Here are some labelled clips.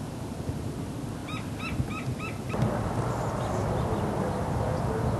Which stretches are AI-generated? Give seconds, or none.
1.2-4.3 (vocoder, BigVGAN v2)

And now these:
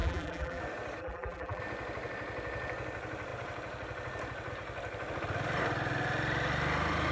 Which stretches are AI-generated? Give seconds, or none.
0.0-0.6 (vocoder, BigVGAN v2); 1.0-1.6